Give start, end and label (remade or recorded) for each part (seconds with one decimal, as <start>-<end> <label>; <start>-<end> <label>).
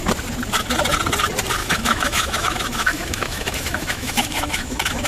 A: 0.0-1.6 recorded; 1.6-5.1 remade